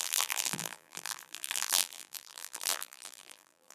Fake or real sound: fake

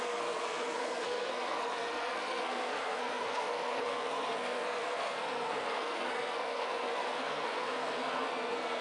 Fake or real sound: fake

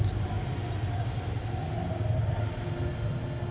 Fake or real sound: real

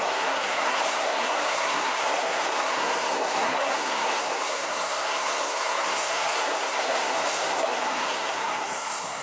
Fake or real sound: fake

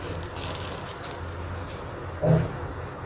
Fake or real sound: real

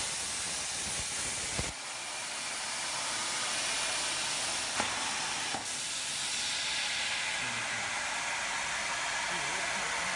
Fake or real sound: real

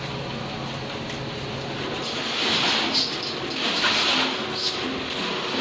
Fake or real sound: real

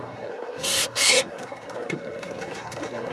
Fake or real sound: fake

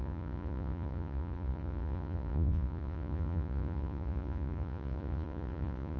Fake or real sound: fake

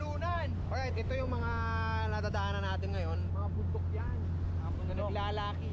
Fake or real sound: real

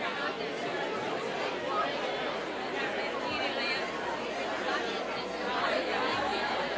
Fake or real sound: real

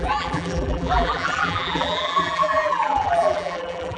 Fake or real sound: fake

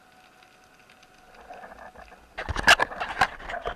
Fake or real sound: real